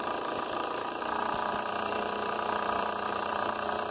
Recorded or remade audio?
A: remade